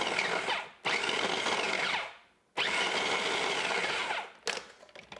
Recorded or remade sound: recorded